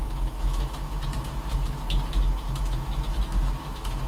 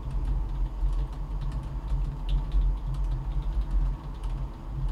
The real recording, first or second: second